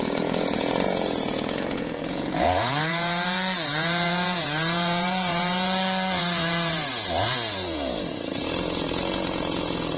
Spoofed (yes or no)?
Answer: yes